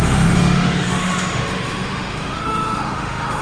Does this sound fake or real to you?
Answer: fake